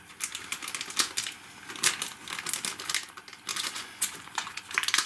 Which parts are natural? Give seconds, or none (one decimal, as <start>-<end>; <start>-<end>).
0.0-3.5; 4.6-5.1